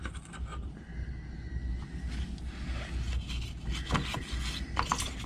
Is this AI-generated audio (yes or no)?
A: no